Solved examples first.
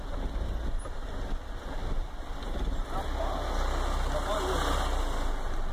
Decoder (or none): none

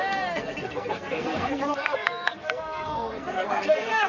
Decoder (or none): codec, SNAC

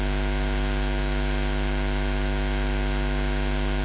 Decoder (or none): none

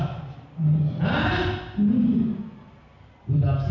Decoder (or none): none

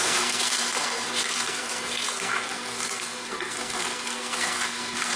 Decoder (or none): codec, SNAC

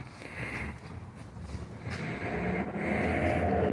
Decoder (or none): none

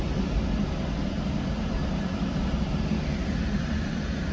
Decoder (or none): none